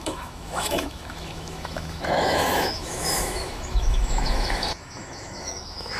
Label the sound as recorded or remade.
remade